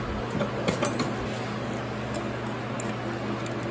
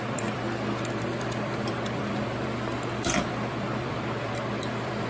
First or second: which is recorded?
first